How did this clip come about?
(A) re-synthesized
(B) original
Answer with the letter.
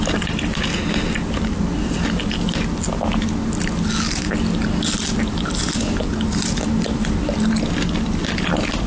B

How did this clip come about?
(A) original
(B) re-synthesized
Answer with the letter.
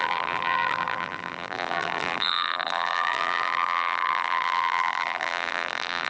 B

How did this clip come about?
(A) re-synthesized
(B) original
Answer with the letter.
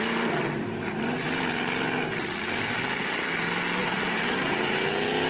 B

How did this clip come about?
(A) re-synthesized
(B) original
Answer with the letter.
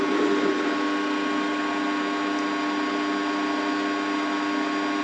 B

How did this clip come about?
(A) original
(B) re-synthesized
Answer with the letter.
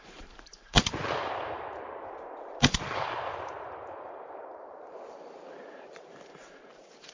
B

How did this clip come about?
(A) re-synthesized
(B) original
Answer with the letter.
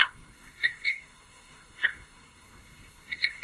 A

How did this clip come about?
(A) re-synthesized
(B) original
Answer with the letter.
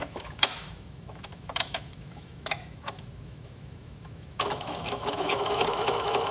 A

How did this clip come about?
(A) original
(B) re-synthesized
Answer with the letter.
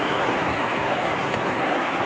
B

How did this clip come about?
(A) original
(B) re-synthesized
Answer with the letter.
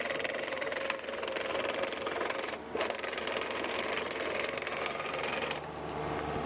A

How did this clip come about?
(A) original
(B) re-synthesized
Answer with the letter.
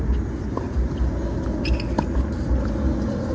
A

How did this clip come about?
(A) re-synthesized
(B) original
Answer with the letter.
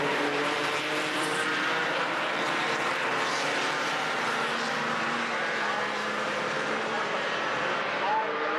A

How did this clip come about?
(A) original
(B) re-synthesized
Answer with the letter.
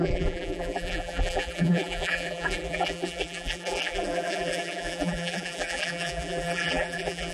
B